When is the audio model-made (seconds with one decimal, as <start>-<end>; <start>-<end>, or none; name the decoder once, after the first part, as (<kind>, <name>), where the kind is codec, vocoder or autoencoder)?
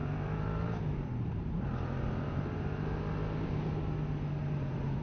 0.0-3.0 (vocoder, BigVGAN v2); 4.4-5.0